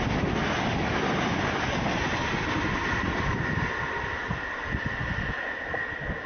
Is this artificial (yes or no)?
no